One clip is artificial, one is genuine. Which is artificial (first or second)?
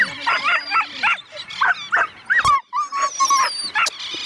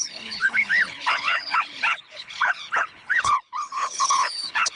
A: second